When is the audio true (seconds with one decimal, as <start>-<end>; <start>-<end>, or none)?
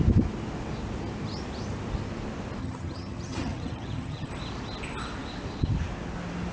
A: 0.0-2.6; 4.3-6.5